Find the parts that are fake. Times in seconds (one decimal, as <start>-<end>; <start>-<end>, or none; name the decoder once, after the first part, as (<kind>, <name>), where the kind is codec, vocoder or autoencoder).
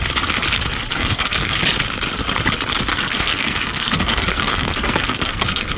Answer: 0.9-1.6 (codec, SNAC); 2.9-5.8